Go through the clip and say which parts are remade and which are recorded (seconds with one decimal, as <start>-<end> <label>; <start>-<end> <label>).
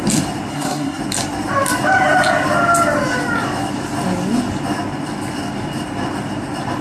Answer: 0.0-0.5 recorded; 0.5-1.0 remade; 1.0-6.8 recorded